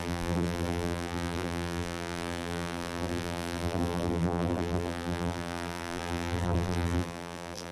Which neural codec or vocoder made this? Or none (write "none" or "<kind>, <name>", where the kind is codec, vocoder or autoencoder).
vocoder, BigVGAN v2